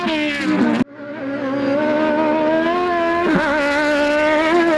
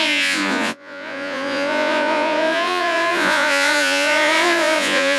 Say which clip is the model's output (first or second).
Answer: second